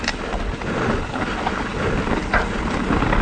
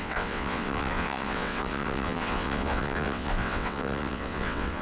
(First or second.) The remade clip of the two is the second